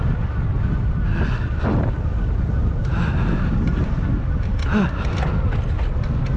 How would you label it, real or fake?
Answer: real